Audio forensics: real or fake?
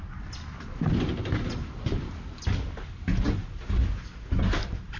real